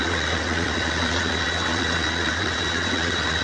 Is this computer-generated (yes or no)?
yes